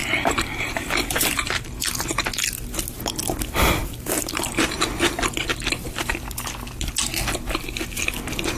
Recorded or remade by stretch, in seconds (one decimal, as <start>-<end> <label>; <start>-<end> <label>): 0.0-1.9 remade; 1.9-3.8 recorded; 3.8-4.7 remade; 4.7-8.6 recorded